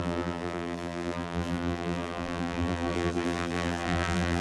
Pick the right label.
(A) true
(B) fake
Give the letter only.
B